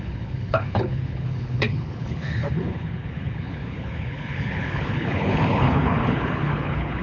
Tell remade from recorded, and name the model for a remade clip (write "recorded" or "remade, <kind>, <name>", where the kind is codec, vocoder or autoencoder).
remade, codec, HILCodec